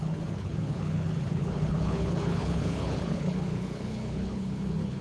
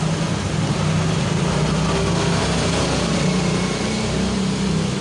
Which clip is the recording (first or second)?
second